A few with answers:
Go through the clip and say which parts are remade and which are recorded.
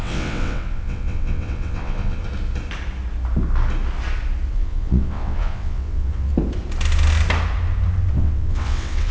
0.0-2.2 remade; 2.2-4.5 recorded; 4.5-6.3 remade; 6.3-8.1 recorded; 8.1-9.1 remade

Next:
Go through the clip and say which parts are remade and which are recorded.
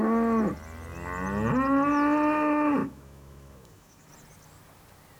0.0-2.8 recorded; 2.8-4.1 remade; 4.1-5.2 recorded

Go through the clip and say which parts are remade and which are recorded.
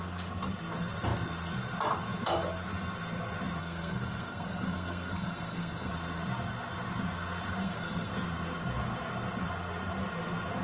0.0-3.6 recorded; 3.6-5.9 remade; 5.9-7.6 recorded; 7.6-8.1 remade; 8.1-10.6 recorded